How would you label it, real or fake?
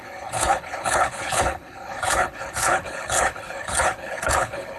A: fake